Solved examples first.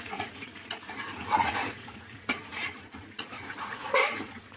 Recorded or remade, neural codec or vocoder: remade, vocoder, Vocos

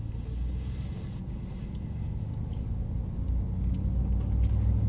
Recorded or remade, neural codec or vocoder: recorded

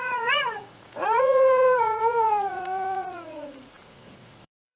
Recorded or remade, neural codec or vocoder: remade, vocoder, Vocos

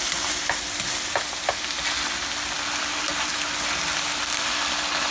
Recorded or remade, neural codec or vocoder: recorded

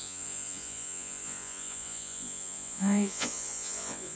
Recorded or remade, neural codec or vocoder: remade, vocoder, Vocos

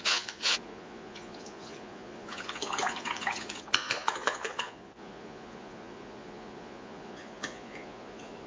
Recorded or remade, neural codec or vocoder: remade, vocoder, Vocos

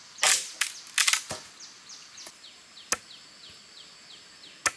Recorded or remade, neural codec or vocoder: recorded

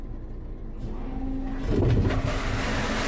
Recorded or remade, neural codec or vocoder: recorded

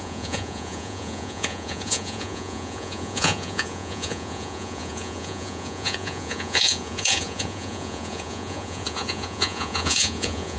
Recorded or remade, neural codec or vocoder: remade, vocoder, Vocos